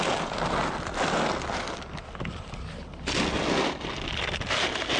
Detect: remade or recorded recorded